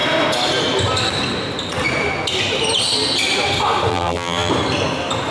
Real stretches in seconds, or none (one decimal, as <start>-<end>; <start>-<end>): 0.0-3.9; 4.5-5.3